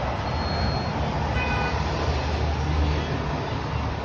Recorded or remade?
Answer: recorded